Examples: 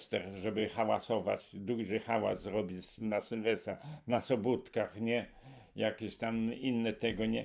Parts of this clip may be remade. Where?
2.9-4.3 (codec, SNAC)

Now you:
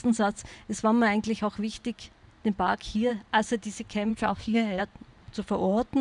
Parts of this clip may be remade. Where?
4.1-4.8 (codec, SNAC)

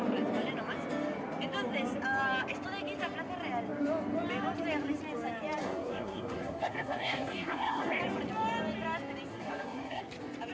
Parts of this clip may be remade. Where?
5.6-8.0 (codec, SNAC); 9.3-10.0

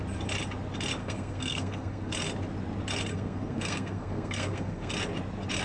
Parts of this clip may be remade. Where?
1.0-2.1 (codec, SNAC); 3.1-4.9

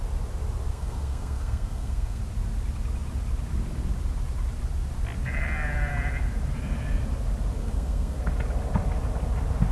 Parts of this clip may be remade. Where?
0.7-2.2 (codec, SNAC); 7.6-8.2

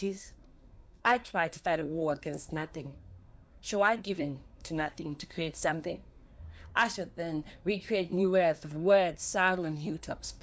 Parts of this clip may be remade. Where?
0.0-6.7 (codec, SNAC); 7.5-10.4

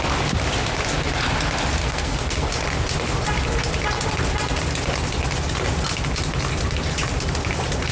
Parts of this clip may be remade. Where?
1.8-2.5 (codec, SNAC)